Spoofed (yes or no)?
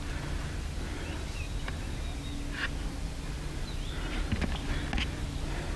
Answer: no